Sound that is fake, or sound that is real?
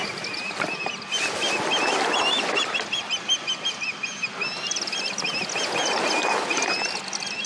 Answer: real